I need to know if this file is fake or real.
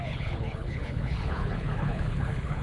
fake